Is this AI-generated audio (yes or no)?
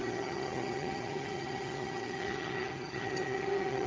yes